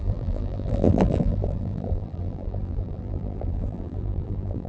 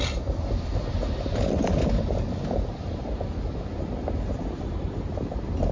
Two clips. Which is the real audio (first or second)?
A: second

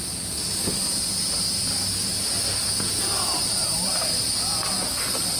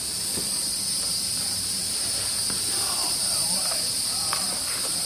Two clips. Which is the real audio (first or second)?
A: first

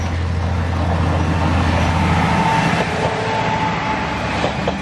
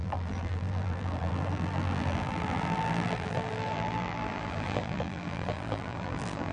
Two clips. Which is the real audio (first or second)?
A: first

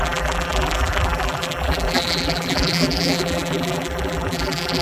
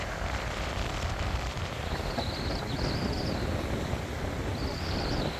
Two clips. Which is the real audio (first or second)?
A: second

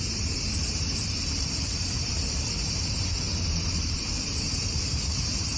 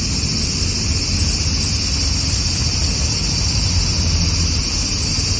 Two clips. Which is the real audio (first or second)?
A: second